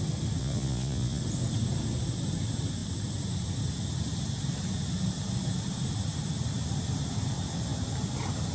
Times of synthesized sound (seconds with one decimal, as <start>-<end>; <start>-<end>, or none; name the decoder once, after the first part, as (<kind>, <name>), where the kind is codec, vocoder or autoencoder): 0.4-1.2 (vocoder, Vocos)